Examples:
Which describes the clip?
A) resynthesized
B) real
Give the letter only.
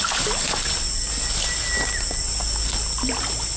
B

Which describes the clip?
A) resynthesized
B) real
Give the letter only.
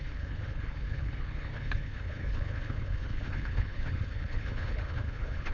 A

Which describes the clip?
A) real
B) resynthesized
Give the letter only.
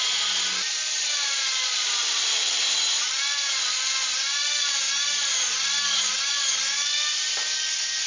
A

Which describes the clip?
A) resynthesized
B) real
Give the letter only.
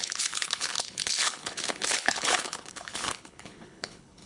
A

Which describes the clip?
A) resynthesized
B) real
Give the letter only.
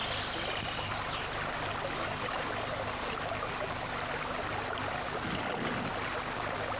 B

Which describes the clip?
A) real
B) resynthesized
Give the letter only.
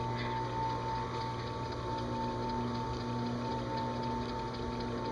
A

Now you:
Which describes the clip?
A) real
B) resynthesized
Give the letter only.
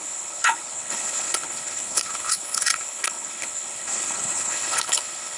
B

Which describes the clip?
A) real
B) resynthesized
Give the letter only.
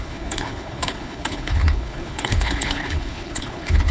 B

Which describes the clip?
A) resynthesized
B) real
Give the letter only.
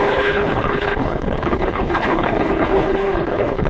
A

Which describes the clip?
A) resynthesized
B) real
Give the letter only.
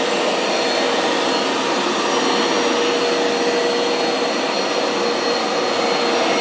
B